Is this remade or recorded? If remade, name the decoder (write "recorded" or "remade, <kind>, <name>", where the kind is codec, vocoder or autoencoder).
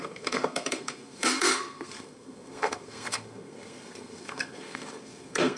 remade, codec, SNAC